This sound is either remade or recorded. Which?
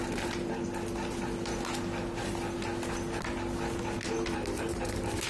recorded